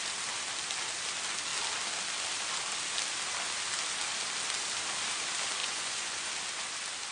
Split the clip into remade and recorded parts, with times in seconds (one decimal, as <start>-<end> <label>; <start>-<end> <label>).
0.0-5.6 recorded; 5.6-6.3 remade; 6.3-7.1 recorded